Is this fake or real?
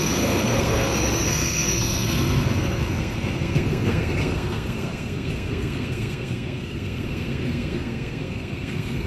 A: fake